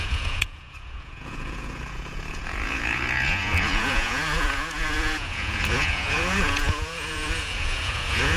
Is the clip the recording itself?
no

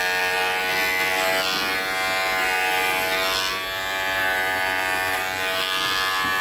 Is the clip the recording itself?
yes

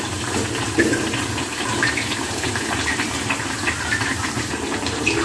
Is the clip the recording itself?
no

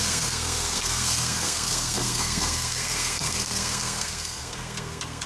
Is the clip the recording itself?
no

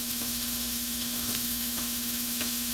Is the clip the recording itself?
no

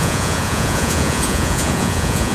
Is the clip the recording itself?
no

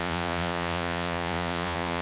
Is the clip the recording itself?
no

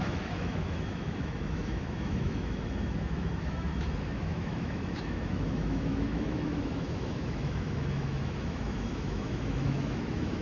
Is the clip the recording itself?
no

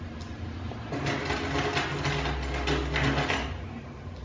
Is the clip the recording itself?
yes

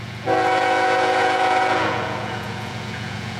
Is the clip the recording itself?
no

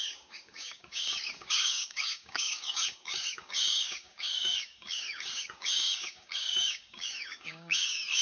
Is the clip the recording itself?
no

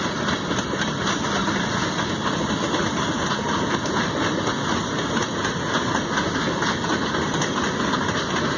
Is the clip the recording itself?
yes